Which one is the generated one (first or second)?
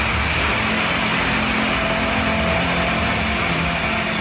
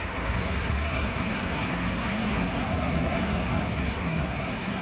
second